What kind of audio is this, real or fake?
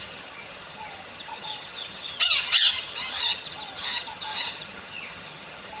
fake